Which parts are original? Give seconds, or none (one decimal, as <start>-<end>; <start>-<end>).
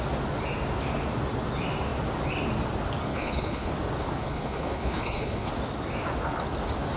0.0-3.0; 3.7-4.2; 5.5-7.0